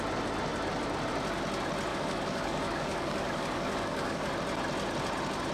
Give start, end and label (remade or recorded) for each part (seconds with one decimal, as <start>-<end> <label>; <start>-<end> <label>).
0.0-1.9 recorded; 1.9-4.3 remade; 4.3-5.5 recorded